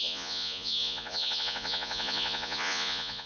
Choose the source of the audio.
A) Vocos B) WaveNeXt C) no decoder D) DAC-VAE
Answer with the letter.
A